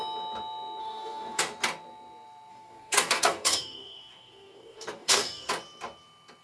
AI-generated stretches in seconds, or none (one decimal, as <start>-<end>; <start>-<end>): 0.8-1.4; 2.5-5.5